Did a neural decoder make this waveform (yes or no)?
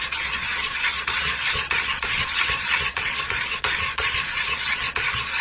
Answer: yes